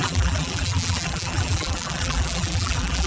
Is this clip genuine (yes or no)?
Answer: no